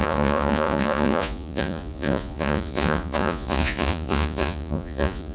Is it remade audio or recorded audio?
remade